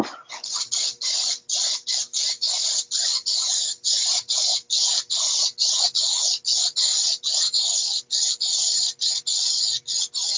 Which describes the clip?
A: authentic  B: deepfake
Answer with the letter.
A